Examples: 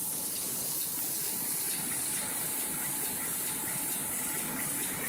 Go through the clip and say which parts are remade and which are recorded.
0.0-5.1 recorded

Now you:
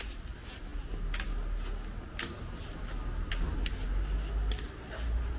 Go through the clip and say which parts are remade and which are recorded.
0.0-5.4 recorded